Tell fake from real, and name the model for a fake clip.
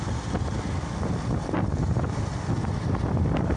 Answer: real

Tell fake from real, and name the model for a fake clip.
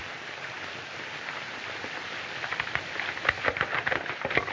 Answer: real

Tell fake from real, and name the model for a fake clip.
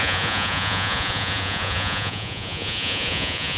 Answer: fake, vocoder, Vocos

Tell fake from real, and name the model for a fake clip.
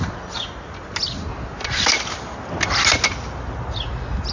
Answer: real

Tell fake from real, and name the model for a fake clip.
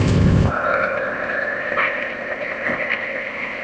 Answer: fake, codec, ZipCodec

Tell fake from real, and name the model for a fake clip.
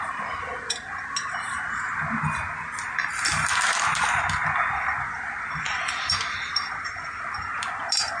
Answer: real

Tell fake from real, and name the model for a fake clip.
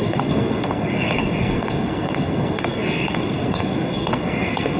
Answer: fake, codec, SNAC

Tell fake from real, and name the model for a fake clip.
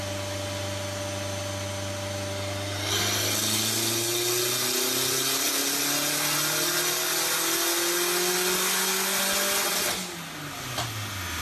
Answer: real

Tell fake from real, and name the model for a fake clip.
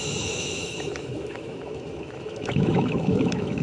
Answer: fake, autoencoder, DAC-VAE